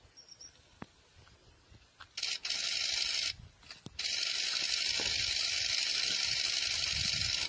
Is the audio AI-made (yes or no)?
no